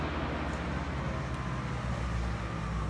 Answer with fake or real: real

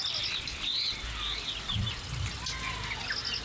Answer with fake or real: real